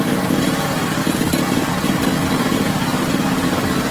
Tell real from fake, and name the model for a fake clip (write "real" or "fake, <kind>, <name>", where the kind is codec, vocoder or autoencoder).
fake, vocoder, BigVGAN v2